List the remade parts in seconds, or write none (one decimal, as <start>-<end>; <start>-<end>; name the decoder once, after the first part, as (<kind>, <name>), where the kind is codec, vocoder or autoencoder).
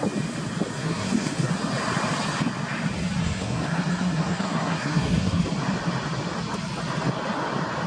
0.7-1.5 (codec, SNAC); 3.2-5.4